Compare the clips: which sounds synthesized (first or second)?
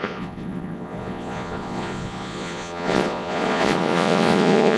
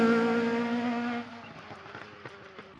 first